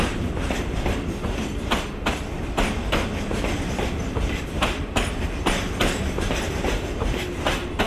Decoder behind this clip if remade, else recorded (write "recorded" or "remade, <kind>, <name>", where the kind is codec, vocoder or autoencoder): remade, vocoder, BigVGAN v2